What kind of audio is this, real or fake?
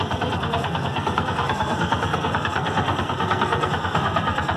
fake